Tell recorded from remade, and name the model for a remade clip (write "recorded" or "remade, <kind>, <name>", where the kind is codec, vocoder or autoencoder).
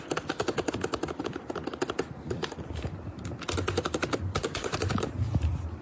recorded